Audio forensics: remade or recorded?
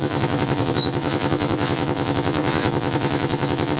remade